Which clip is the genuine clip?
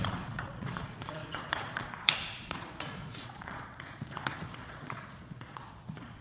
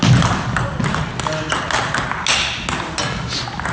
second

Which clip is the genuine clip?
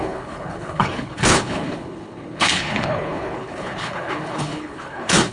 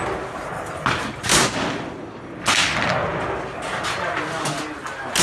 second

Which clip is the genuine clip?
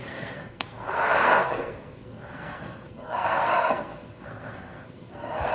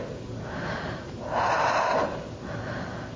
second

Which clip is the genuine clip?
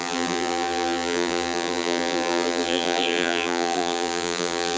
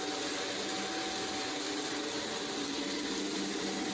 second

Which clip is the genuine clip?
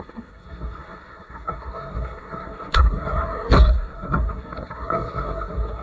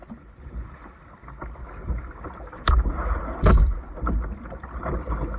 second